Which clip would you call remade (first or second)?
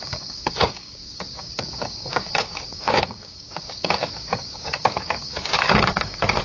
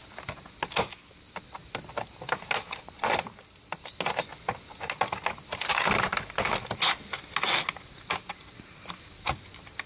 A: first